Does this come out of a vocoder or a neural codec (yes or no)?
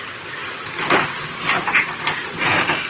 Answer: no